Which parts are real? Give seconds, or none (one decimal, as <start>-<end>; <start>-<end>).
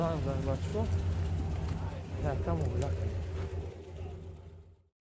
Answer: 0.0-5.0